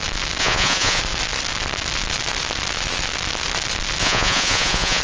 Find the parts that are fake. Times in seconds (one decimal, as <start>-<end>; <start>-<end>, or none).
0.4-1.0; 4.0-5.0